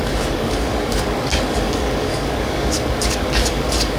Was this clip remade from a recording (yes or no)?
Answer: yes